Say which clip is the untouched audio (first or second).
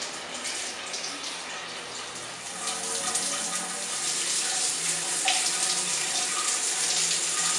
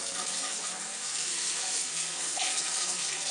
first